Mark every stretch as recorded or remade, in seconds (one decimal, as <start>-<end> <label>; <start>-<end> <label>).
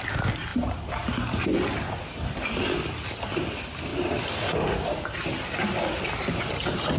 0.0-7.0 recorded